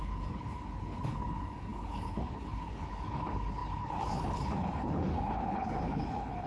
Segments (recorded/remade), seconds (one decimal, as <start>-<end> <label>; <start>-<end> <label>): 0.0-6.5 remade